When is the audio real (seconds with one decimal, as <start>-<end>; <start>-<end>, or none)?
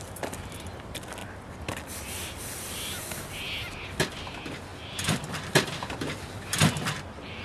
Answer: 0.0-4.7; 6.6-7.4